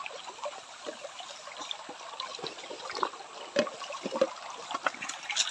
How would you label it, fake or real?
real